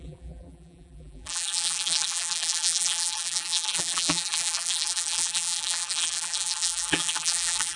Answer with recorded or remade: remade